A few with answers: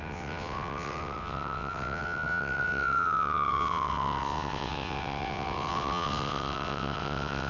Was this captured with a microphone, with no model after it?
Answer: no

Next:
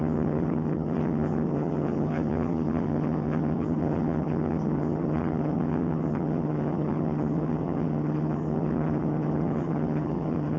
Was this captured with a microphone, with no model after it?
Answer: no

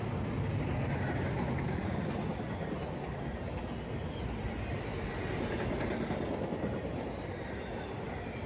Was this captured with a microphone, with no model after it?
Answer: yes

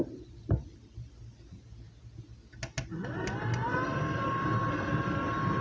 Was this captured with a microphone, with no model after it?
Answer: yes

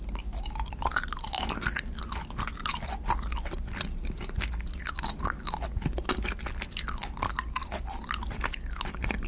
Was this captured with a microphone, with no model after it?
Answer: yes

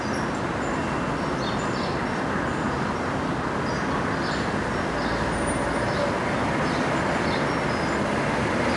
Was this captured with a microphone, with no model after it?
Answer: yes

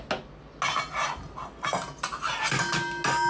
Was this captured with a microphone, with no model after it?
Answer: yes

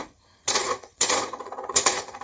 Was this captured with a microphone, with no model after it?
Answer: no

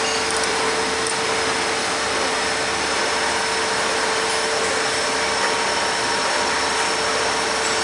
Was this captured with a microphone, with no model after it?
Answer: yes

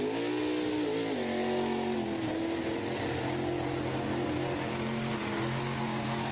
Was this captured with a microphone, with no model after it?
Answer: yes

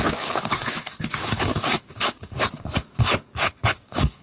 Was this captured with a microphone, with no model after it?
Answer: no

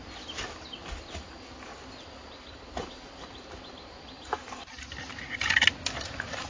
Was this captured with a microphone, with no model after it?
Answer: yes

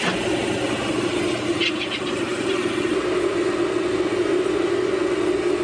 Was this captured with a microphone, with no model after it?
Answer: yes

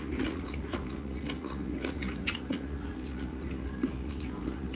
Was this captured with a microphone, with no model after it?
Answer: no